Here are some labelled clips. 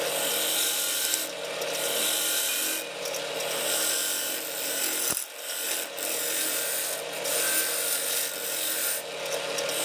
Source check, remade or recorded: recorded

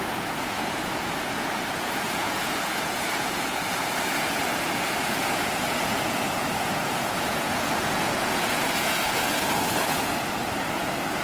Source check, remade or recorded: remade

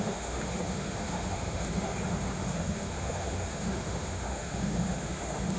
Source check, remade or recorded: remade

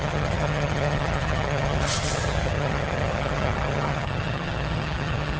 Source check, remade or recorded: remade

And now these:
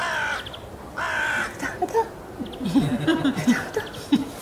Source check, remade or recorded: recorded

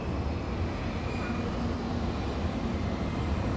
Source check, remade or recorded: recorded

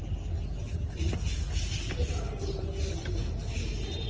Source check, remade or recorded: recorded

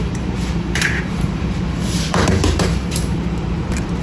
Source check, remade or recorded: remade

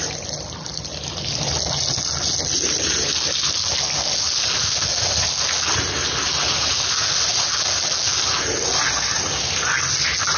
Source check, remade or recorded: recorded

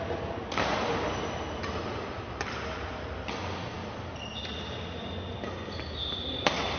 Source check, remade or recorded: recorded